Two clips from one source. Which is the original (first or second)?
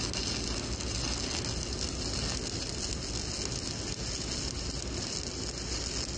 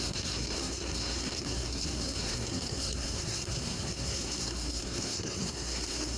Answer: first